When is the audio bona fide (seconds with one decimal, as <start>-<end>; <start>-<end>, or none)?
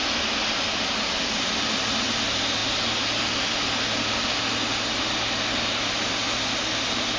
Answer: 0.0-7.2